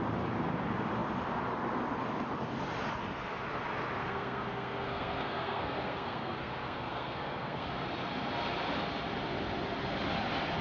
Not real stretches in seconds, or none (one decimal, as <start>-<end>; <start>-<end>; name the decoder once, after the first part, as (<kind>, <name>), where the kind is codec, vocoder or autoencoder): 4.0-7.7 (codec, SNAC)